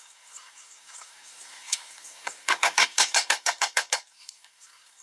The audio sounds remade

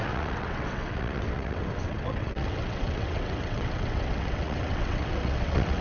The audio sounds remade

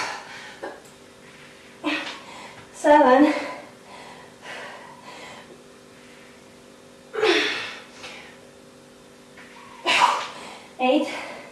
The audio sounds recorded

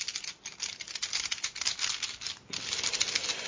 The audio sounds recorded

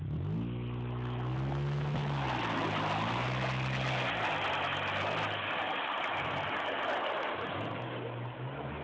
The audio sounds recorded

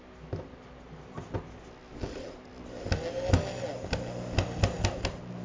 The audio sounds recorded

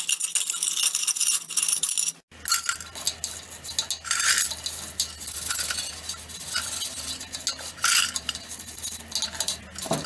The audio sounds recorded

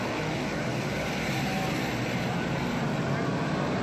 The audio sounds recorded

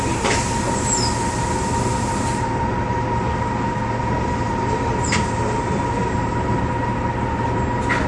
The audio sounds recorded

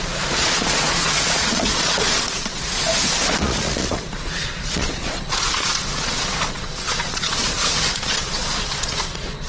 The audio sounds remade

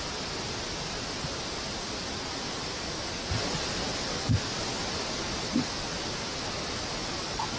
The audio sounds recorded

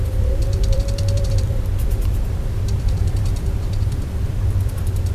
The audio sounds remade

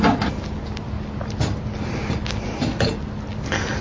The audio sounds recorded